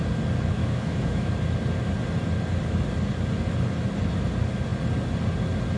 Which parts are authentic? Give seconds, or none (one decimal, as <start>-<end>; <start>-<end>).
0.0-0.6; 1.3-5.8